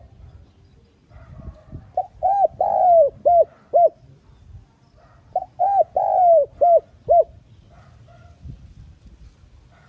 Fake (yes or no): no